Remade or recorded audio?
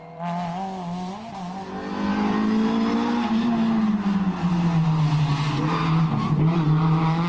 recorded